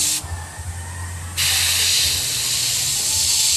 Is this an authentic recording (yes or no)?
yes